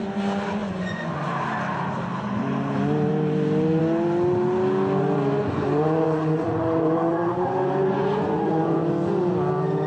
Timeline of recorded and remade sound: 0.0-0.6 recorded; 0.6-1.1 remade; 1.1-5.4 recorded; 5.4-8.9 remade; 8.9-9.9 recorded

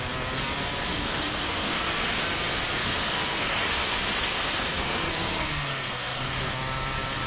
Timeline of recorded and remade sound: 0.0-0.9 recorded; 0.9-2.2 remade; 2.2-2.8 recorded; 2.8-6.5 remade; 6.5-7.3 recorded

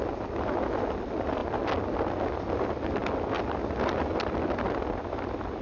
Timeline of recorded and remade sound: 0.0-5.6 recorded

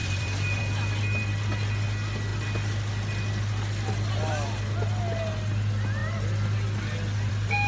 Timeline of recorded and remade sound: 0.0-0.6 remade; 0.6-7.7 recorded

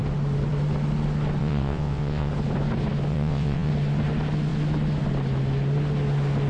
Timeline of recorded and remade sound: 0.0-1.4 recorded; 1.4-2.3 remade; 2.3-3.1 recorded; 3.1-3.7 remade; 3.7-6.5 recorded